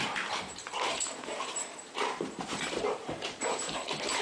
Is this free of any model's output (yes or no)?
no